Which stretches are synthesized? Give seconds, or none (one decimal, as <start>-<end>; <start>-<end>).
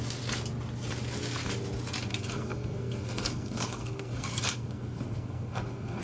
2.1-6.0